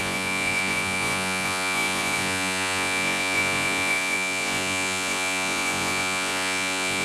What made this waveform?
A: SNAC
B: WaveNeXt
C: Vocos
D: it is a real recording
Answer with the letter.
C